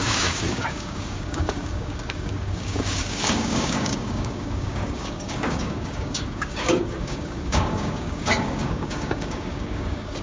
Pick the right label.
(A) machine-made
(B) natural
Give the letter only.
A